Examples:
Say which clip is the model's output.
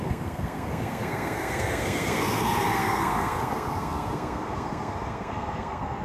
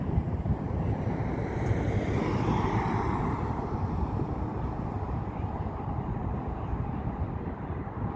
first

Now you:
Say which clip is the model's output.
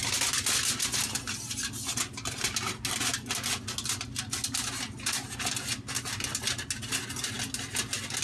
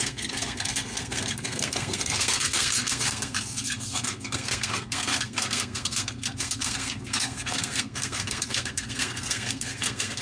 second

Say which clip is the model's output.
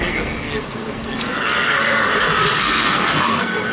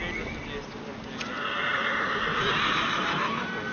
first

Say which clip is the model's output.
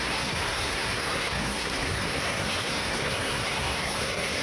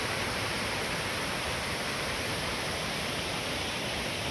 first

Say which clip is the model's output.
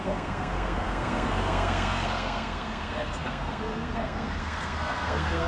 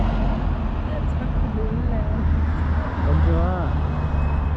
first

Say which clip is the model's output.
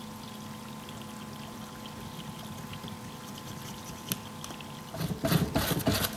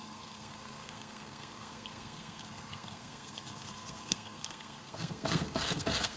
second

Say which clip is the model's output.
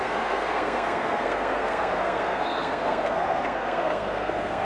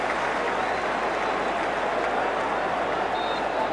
first